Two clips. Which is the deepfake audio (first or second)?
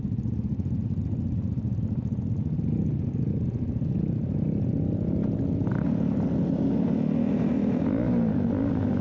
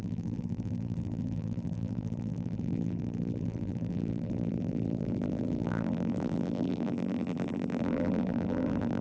second